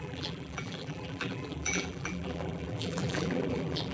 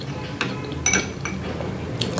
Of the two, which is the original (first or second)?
second